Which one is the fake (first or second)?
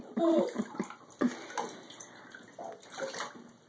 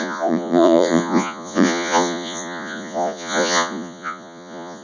second